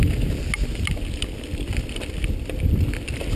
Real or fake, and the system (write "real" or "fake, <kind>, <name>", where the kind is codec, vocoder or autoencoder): real